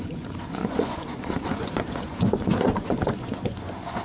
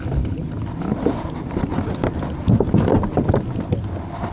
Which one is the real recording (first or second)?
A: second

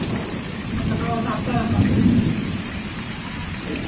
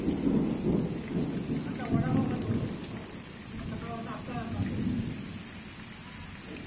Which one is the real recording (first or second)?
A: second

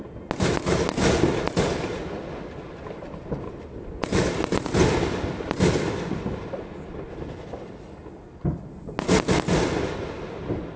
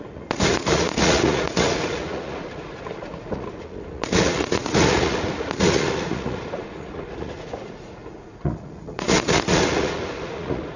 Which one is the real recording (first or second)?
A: first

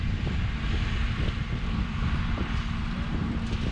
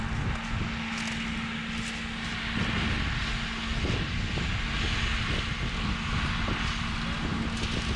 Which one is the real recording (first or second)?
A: second